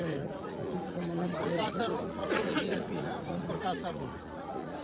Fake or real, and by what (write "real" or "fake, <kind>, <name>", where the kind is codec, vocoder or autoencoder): fake, vocoder, Vocos